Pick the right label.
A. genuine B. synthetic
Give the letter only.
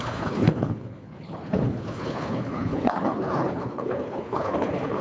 B